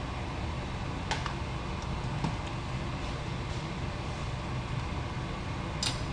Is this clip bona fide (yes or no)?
yes